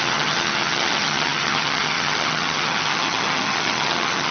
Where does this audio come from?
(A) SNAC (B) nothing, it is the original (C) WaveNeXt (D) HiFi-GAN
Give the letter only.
D